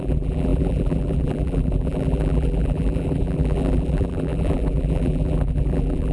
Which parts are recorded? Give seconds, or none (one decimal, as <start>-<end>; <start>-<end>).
none

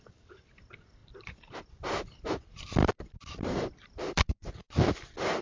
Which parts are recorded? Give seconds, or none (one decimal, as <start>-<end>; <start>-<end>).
0.0-2.8; 3.7-5.4

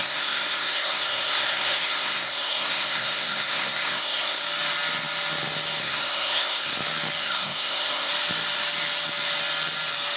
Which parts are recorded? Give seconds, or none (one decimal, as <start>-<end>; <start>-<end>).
4.4-5.8; 6.7-7.2; 8.1-10.2

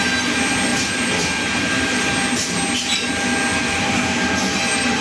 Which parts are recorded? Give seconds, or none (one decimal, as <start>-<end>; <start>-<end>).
0.0-0.7; 2.8-3.5

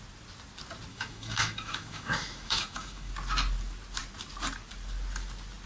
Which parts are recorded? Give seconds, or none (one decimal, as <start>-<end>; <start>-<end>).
0.0-0.9; 3.1-5.7

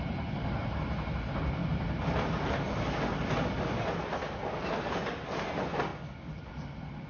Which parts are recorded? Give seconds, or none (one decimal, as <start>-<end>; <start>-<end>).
0.0-7.1

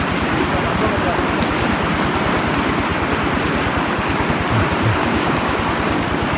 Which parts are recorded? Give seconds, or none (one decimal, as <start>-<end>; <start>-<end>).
0.0-5.0; 5.6-6.4

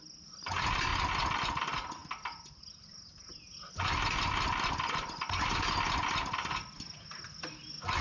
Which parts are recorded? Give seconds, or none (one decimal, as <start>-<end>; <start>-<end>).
0.0-8.0